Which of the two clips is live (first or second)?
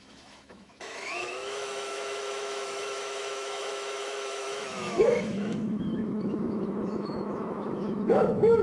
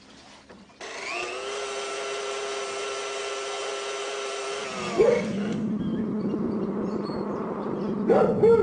second